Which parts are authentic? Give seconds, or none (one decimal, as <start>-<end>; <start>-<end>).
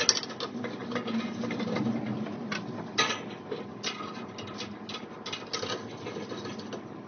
0.0-7.1